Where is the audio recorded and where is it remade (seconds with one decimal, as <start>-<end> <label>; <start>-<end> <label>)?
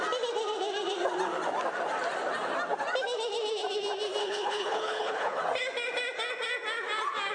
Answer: 0.0-4.2 recorded; 4.2-5.4 remade; 5.4-7.3 recorded